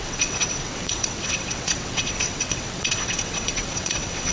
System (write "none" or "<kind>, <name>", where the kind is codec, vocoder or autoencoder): vocoder, WaveNeXt